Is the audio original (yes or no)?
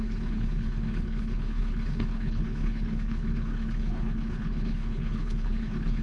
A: no